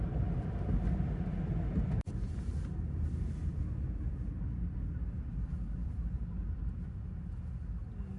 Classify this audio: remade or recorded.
recorded